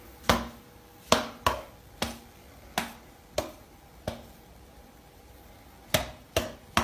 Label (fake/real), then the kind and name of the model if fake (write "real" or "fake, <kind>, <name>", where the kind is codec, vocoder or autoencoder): real